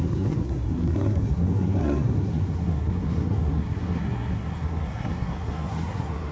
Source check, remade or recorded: remade